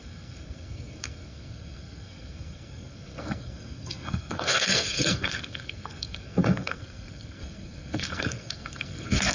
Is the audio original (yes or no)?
no